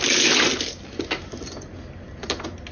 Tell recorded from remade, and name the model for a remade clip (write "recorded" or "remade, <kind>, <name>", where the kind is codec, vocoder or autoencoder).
recorded